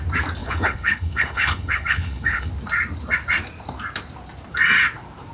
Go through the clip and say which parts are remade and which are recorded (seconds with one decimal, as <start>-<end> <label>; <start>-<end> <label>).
0.0-0.4 recorded; 0.4-2.5 remade; 2.5-5.3 recorded

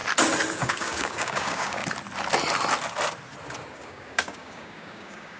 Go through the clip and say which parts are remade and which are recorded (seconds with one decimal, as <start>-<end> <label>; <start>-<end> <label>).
0.0-0.5 recorded; 0.5-1.8 remade; 1.8-3.7 recorded; 3.7-5.4 remade

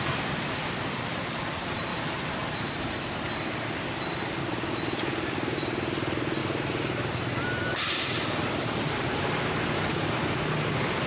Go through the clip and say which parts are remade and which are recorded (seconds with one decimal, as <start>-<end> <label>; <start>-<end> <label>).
0.0-1.9 recorded; 1.9-3.5 remade; 3.5-6.4 recorded; 6.4-7.2 remade; 7.2-11.1 recorded

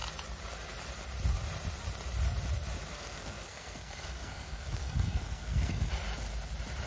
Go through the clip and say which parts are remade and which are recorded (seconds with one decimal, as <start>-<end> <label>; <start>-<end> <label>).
0.0-2.9 recorded; 2.9-5.9 remade; 5.9-6.9 recorded

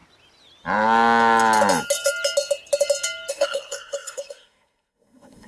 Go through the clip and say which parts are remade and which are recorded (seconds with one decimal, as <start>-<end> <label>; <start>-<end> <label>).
0.0-3.3 recorded; 3.3-5.5 remade

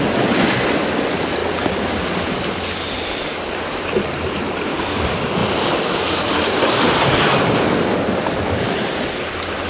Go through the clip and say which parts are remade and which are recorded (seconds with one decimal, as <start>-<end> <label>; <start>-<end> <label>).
0.0-9.7 recorded

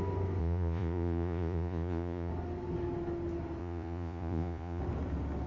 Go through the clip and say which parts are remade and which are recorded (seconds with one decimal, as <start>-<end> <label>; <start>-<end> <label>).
0.0-0.4 recorded; 0.4-2.3 remade; 2.3-3.6 recorded; 3.6-4.8 remade; 4.8-5.5 recorded

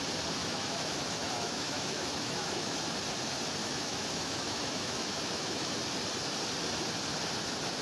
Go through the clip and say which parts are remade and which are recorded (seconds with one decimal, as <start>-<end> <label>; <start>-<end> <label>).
0.0-0.4 recorded; 0.4-2.9 remade; 2.9-3.6 recorded; 3.6-5.7 remade; 5.7-7.8 recorded